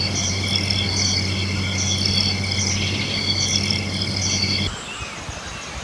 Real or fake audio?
real